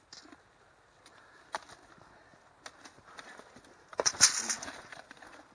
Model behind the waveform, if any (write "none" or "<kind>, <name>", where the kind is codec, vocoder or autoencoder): none